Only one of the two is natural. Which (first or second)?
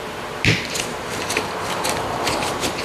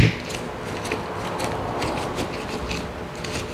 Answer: second